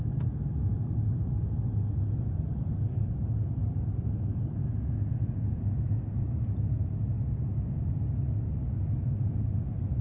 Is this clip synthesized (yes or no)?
no